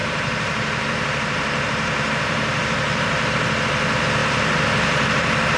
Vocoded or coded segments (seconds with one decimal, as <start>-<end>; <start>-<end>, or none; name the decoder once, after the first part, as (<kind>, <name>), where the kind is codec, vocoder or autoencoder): 0.0-3.4 (vocoder, BigVGAN v2); 4.2-5.6